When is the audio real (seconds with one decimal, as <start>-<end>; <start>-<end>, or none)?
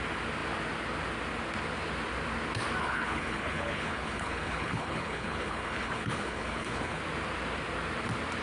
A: 0.0-2.8; 7.0-8.4